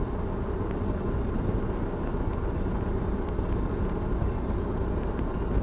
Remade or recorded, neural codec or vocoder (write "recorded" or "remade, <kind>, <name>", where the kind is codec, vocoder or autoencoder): recorded